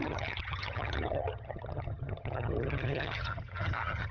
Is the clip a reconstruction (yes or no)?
yes